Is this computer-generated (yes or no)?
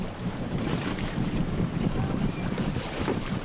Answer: yes